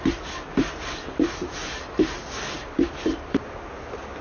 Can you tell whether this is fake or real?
real